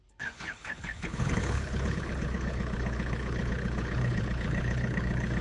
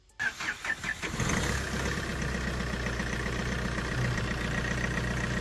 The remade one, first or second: first